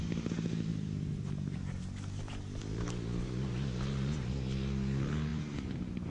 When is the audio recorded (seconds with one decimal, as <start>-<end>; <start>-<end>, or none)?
0.0-6.1